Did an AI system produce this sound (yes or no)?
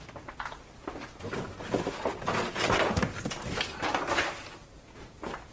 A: no